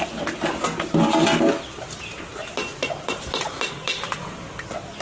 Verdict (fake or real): real